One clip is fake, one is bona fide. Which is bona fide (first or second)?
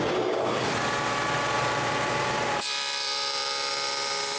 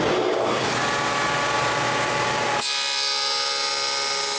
second